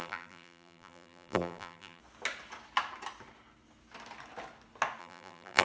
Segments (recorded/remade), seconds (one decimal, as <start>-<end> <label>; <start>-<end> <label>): 0.0-2.0 remade; 2.0-5.0 recorded; 5.0-5.6 remade